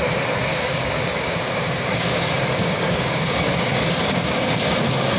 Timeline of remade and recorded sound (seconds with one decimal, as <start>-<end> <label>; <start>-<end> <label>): 0.0-0.5 recorded; 0.5-2.2 remade; 2.2-2.6 recorded; 2.6-4.5 remade; 4.5-5.2 recorded